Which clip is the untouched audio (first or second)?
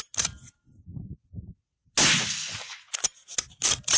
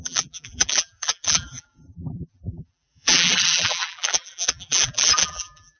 first